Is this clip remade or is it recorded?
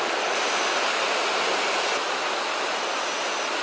recorded